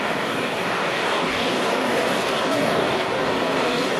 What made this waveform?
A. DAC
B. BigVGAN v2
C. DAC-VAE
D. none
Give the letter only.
A